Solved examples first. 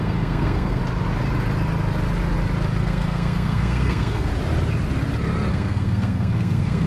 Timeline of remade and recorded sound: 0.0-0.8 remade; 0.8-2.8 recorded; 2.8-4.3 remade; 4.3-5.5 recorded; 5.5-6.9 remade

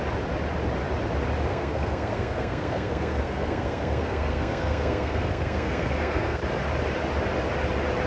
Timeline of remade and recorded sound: 0.0-1.5 recorded; 1.5-6.4 remade; 6.4-8.1 recorded

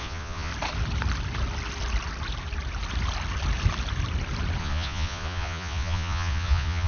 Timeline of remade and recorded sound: 0.0-0.5 remade; 0.5-4.6 recorded; 4.6-6.9 remade

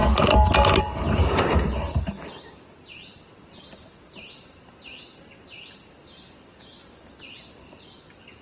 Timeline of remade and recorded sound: 0.0-8.4 recorded

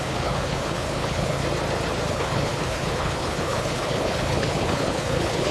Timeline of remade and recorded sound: 0.0-1.4 remade; 1.4-2.1 recorded; 2.1-5.5 remade